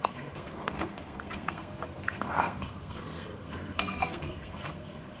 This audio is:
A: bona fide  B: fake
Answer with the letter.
B